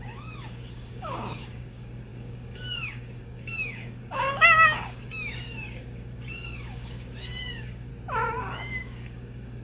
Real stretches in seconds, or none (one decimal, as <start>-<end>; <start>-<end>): 7.9-8.4